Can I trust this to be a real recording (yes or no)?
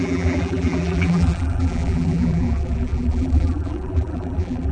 no